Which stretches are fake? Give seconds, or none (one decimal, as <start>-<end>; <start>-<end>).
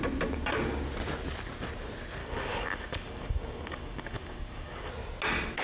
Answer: 2.2-4.9